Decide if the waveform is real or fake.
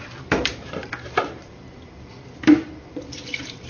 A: fake